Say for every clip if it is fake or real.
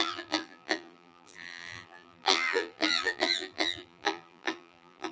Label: fake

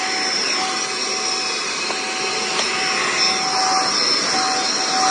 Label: real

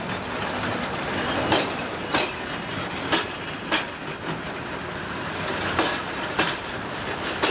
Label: real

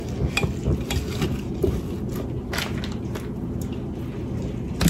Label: real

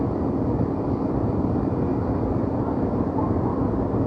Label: real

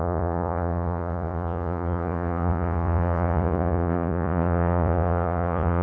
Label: fake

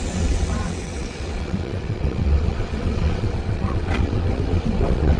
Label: fake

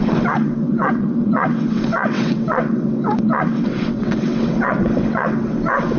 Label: fake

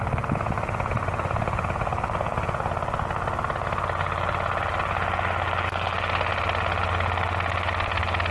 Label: real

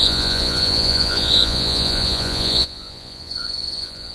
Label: fake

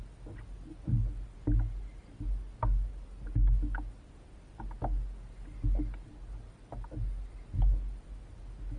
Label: real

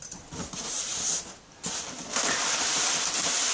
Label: real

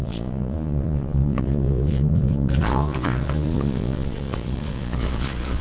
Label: fake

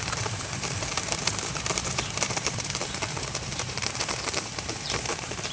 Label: fake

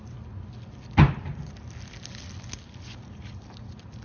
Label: real